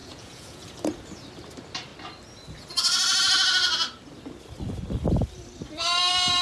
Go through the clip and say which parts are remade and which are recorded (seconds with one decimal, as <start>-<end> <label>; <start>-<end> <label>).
0.0-0.8 remade; 0.8-6.4 recorded